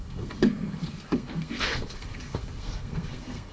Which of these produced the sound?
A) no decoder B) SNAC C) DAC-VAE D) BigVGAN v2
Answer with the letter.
B